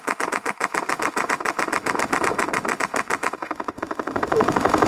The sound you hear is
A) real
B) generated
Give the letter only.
B